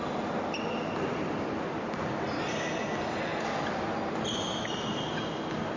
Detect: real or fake real